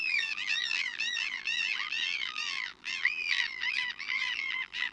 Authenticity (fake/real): fake